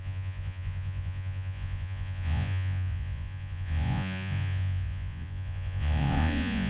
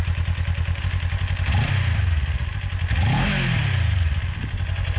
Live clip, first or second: second